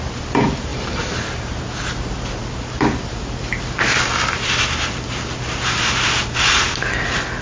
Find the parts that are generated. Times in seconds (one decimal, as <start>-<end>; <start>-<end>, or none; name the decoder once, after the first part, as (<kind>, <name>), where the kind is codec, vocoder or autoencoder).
0.7-2.0 (vocoder, BigVGAN v2)

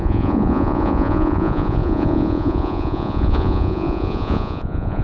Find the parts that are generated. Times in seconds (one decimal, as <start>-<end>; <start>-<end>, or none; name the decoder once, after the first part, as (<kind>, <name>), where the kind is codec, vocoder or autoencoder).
0.0-5.0 (vocoder, Vocos)